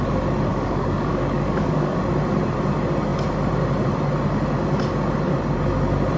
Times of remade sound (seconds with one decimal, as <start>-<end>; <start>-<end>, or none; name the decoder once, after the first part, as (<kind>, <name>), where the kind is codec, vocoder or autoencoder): 0.5-2.0 (codec, DAC)